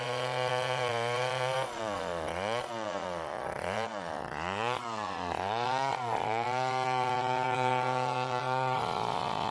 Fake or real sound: fake